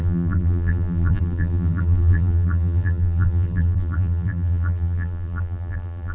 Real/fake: fake